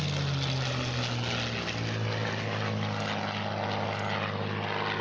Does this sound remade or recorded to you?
recorded